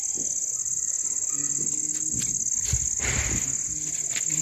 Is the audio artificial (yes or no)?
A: no